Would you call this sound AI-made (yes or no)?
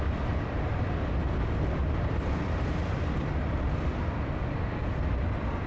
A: no